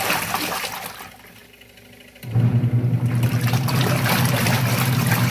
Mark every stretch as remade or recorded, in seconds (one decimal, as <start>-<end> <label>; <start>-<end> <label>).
0.0-5.3 recorded